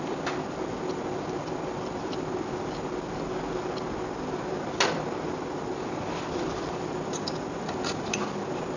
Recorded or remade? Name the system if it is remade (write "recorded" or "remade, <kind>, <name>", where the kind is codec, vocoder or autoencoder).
recorded